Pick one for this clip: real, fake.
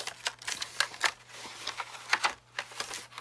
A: real